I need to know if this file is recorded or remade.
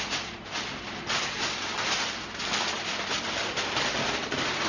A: recorded